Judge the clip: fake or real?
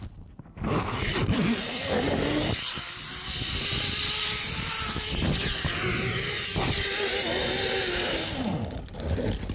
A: real